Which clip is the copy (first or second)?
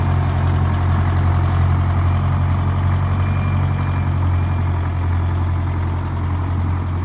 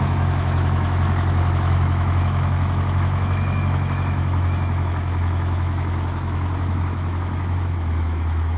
second